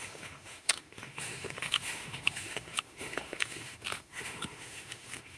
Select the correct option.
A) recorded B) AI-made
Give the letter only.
B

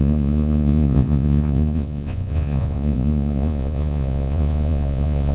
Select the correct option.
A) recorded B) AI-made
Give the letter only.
B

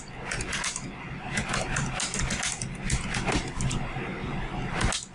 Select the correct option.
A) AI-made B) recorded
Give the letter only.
B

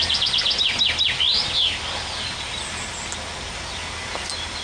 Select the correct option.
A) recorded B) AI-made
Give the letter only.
A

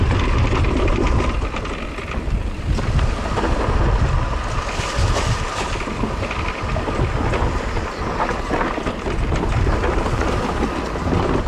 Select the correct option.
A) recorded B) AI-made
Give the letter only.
A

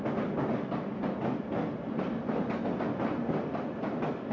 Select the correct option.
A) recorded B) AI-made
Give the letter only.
A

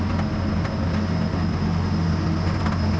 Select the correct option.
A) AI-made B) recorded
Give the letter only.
B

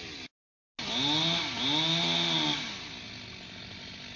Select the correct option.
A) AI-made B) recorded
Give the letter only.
B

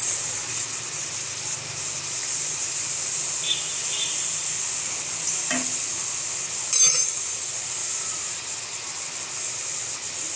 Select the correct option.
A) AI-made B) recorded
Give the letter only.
B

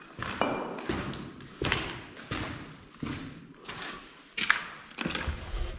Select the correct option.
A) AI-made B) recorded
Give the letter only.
B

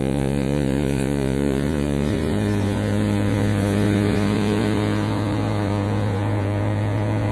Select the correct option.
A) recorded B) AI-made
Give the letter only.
B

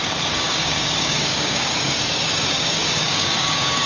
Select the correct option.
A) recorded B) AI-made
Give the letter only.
B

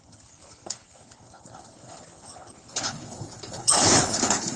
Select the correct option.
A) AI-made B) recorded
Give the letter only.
A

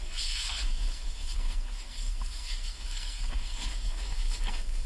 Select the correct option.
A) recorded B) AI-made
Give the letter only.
B